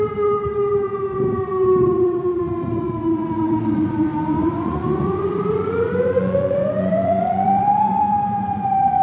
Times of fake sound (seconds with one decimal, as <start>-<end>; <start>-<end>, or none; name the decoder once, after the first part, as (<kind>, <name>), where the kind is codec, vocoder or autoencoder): 0.0-9.0 (vocoder, Vocos)